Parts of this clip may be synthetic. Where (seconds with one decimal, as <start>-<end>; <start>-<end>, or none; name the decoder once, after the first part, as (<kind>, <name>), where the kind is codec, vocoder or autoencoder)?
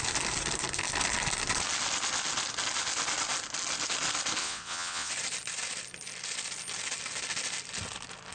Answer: 4.4-5.1 (vocoder, WaveNeXt)